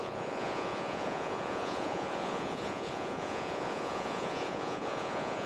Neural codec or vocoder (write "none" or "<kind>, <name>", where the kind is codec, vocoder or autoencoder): vocoder, Vocos